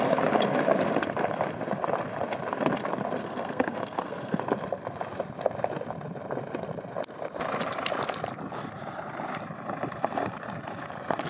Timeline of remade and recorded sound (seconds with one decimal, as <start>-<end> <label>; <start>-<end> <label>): 0.0-3.2 recorded; 3.2-4.4 remade; 4.4-11.3 recorded